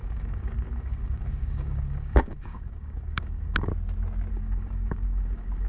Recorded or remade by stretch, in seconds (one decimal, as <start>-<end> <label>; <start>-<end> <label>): 0.0-3.7 remade; 3.7-4.3 recorded; 4.3-5.7 remade